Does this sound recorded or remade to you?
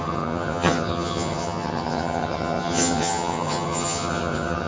remade